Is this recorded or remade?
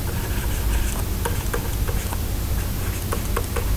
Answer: recorded